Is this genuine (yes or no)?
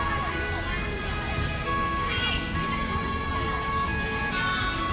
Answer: yes